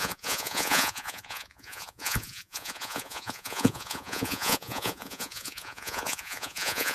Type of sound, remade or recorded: remade